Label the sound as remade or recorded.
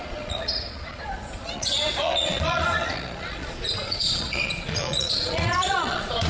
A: remade